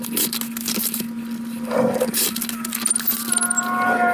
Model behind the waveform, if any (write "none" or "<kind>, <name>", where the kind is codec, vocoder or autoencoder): none